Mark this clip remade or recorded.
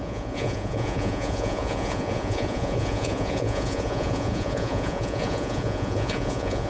remade